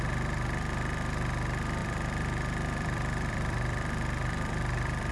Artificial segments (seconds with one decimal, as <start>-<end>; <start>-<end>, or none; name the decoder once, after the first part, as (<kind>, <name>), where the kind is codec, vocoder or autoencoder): 1.8-5.1 (vocoder, BigVGAN v2)